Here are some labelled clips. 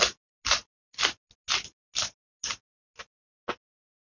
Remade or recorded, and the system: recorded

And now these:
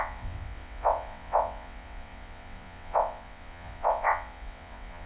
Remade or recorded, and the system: remade, vocoder, WaveNeXt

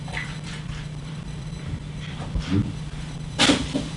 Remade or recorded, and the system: remade, vocoder, BigVGAN v2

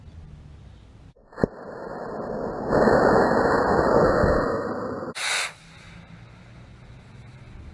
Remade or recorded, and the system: recorded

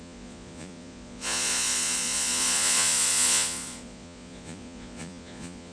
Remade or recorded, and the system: remade, vocoder, Vocos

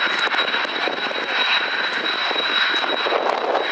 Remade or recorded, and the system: recorded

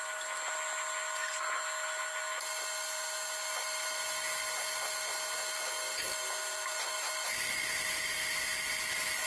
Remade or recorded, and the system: recorded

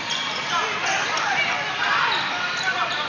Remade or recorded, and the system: recorded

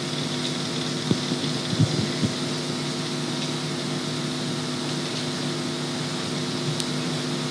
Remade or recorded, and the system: recorded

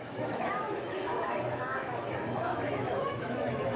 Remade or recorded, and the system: remade, autoencoder, DAC-VAE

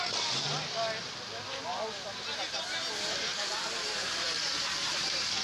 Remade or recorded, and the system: recorded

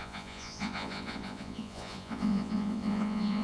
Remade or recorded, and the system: remade, vocoder, Vocos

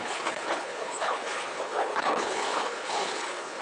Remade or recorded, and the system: remade, codec, HILCodec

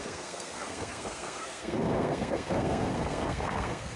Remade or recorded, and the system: remade, codec, SNAC